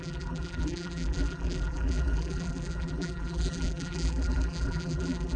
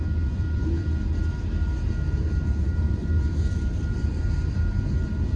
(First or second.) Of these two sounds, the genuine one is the second